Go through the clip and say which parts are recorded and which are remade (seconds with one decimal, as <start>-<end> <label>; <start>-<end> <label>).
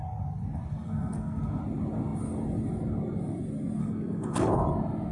0.0-0.7 recorded; 0.7-1.6 remade; 1.6-3.8 recorded; 3.8-4.5 remade; 4.5-5.1 recorded